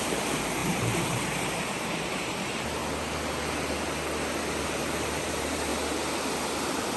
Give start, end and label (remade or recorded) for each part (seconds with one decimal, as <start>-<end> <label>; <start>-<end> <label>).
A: 0.0-2.8 remade; 2.8-4.6 recorded; 4.6-5.7 remade; 5.7-6.6 recorded; 6.6-7.0 remade